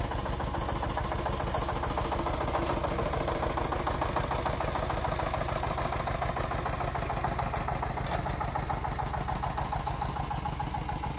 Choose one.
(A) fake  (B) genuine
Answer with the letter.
B